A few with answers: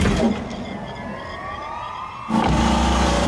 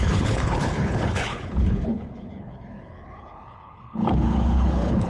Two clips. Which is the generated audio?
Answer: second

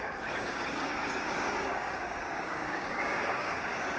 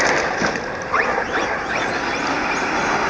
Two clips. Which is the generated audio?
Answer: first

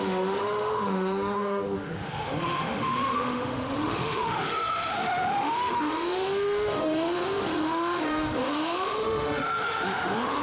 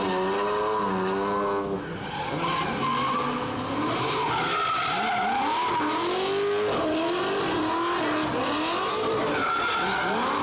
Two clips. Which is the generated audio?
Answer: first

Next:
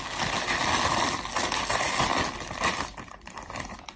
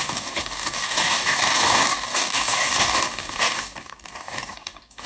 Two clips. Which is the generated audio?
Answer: second